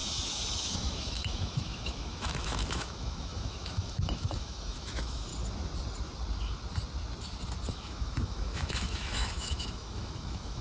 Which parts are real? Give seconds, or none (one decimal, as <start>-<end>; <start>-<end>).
5.3-7.7